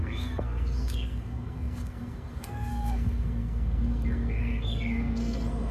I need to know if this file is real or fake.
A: fake